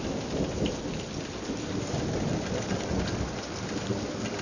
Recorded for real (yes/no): yes